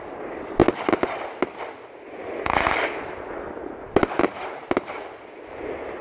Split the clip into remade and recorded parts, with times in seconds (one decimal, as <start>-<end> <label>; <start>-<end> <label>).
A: 0.0-6.0 recorded